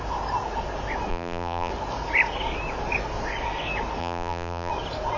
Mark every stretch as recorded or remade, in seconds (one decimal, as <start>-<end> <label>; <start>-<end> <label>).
0.0-1.1 recorded; 1.1-1.7 remade; 1.7-4.0 recorded; 4.0-4.7 remade; 4.7-5.2 recorded